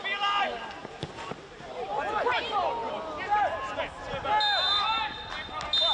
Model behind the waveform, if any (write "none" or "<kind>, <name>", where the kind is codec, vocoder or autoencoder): none